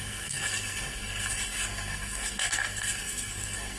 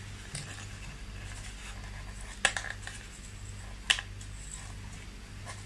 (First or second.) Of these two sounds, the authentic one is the second